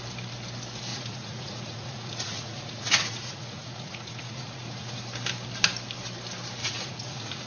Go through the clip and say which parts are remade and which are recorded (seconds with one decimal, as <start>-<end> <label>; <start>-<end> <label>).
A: 0.0-0.9 recorded; 0.9-5.0 remade; 5.0-6.6 recorded; 6.6-7.5 remade